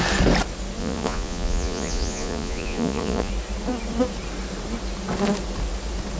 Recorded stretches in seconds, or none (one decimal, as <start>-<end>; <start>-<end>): 0.0-0.8; 3.3-6.2